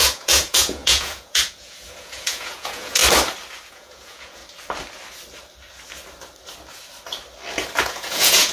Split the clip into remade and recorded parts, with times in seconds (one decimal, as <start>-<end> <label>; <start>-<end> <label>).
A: 0.0-3.0 remade; 3.0-3.7 recorded; 3.7-4.4 remade; 4.4-7.8 recorded; 7.8-8.5 remade